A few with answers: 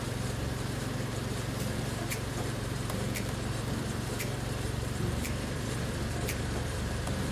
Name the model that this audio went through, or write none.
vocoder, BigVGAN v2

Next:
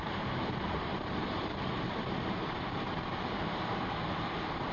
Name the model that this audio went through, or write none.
vocoder, BigVGAN v2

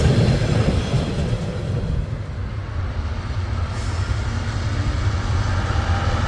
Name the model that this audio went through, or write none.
none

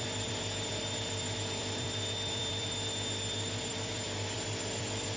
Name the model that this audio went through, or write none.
vocoder, BigVGAN v2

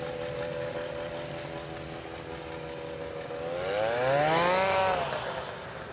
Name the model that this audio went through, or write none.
none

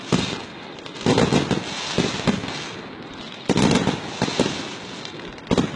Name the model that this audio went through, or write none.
none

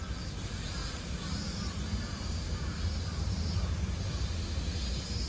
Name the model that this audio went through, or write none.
none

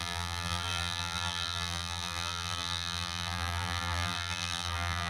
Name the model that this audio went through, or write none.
vocoder, BigVGAN v2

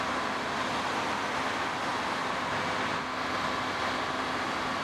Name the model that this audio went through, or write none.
none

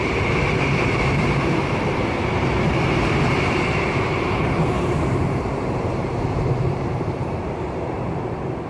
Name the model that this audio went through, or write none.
vocoder, BigVGAN v2